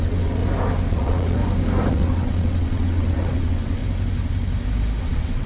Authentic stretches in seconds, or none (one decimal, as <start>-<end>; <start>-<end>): 0.4-0.9; 1.4-1.9; 3.8-5.0